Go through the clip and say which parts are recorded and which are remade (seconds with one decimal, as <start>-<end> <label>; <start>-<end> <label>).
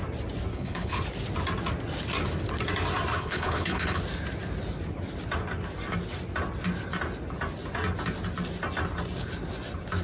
0.0-0.5 recorded; 0.5-1.0 remade; 1.0-3.1 recorded; 3.1-4.0 remade; 4.0-10.0 recorded